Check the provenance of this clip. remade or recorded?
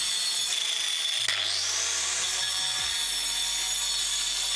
recorded